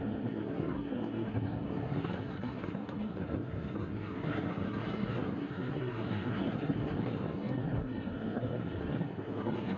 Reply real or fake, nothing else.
fake